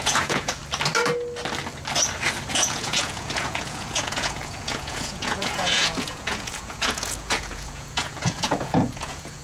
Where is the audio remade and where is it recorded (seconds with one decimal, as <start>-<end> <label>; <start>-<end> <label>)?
0.0-0.6 remade; 0.6-2.5 recorded; 2.5-9.4 remade